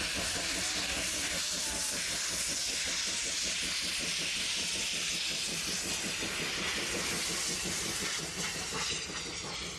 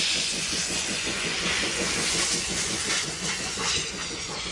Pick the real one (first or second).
first